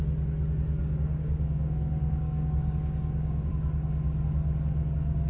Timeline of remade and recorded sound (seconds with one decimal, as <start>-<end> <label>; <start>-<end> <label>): 0.0-0.8 recorded; 0.8-3.5 remade; 3.5-5.3 recorded